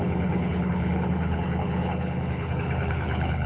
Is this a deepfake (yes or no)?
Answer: yes